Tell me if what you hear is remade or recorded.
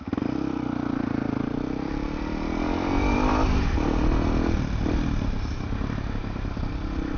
remade